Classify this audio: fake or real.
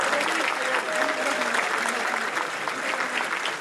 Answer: real